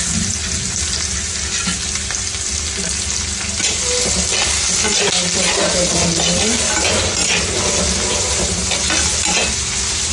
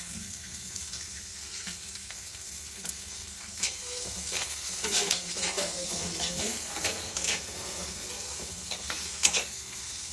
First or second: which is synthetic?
second